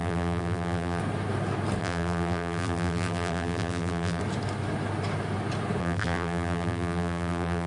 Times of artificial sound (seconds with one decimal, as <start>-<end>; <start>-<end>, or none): 0.0-1.0; 1.8-4.2; 5.8-7.7